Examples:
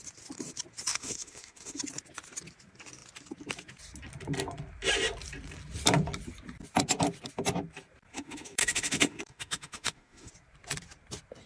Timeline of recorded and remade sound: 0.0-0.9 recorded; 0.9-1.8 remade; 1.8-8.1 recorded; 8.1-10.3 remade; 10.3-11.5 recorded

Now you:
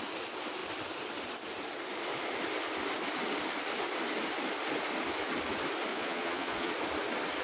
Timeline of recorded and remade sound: 0.0-5.9 recorded; 5.9-6.7 remade; 6.7-7.4 recorded

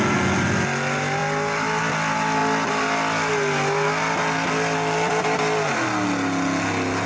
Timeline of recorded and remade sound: 0.0-7.1 recorded

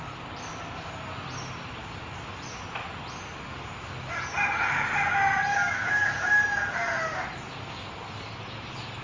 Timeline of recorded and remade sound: 0.0-5.5 recorded; 5.5-6.3 remade; 6.3-9.0 recorded